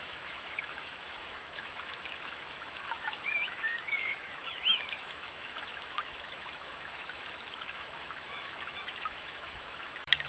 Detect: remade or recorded remade